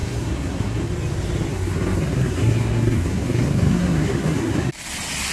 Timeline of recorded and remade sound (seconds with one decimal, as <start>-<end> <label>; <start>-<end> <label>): 0.0-0.9 remade; 0.9-1.5 recorded; 1.5-4.7 remade; 4.7-5.3 recorded